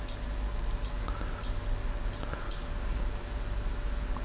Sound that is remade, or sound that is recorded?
recorded